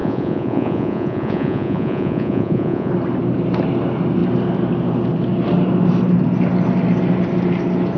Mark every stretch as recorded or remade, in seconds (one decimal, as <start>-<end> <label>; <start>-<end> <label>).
0.0-2.9 remade; 2.9-8.0 recorded